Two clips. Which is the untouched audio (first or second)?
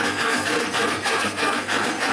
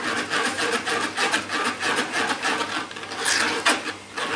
second